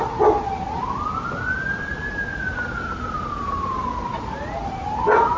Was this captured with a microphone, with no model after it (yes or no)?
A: yes